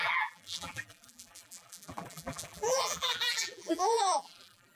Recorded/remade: remade